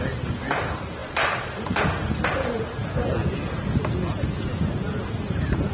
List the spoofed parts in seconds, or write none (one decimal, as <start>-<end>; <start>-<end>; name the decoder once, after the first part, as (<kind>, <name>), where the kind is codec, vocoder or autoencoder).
1.0-1.8 (vocoder, BigVGAN v2)